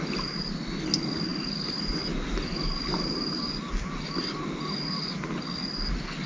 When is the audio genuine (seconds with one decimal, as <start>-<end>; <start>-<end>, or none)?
0.0-1.3; 4.8-6.3